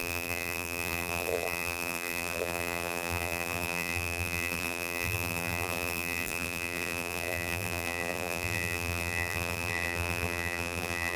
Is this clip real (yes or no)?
no